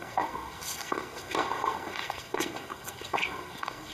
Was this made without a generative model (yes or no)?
no